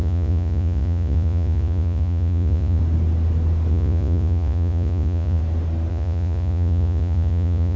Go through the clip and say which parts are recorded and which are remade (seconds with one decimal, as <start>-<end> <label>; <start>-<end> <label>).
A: 0.0-2.8 remade; 2.8-3.7 recorded; 3.7-5.4 remade; 5.4-5.9 recorded; 5.9-7.8 remade